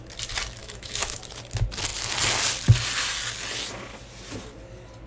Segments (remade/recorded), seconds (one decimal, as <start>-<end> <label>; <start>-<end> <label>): 0.0-0.6 recorded; 0.6-1.2 remade; 1.2-5.1 recorded